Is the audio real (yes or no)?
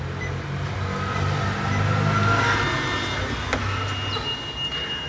yes